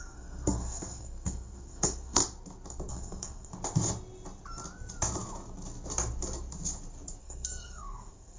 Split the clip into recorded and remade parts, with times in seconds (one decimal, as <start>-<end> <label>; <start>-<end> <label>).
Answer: 0.0-2.2 remade; 2.2-2.9 recorded; 2.9-3.5 remade; 3.5-7.2 recorded; 7.2-8.4 remade